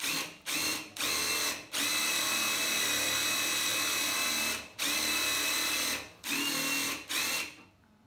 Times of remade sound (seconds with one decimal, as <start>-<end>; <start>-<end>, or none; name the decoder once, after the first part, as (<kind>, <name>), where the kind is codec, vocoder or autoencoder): none